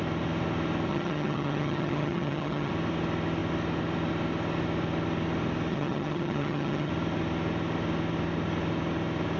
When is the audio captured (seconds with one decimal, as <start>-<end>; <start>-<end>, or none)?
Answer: 0.0-0.9; 2.7-5.7; 6.9-9.4